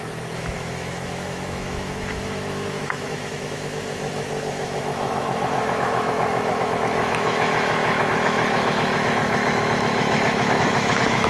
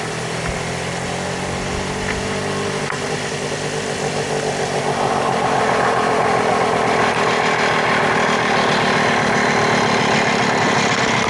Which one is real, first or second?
second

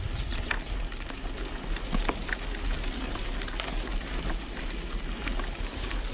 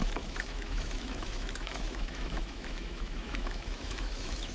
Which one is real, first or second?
first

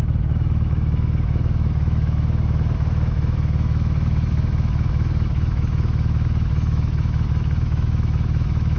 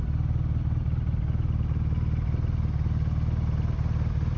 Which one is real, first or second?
second